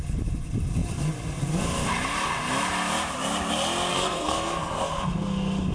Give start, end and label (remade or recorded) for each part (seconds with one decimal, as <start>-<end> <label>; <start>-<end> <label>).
0.0-3.9 recorded; 3.9-5.0 remade; 5.0-5.7 recorded